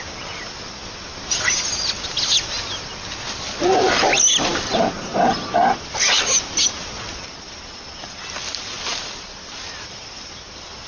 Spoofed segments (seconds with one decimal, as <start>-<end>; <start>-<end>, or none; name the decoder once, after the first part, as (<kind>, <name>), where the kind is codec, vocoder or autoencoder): none